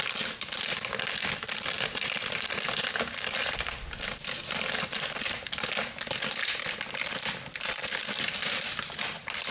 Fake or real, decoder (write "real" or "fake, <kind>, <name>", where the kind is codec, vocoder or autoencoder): real